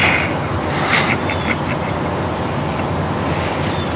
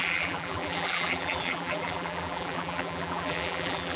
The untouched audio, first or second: first